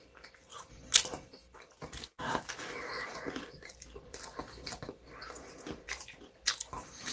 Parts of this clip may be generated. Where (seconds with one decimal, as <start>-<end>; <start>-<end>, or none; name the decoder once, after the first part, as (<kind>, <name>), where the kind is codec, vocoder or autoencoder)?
0.4-4.2 (vocoder, BigVGAN v2)